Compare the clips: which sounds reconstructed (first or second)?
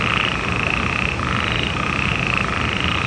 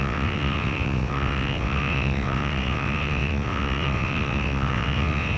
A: second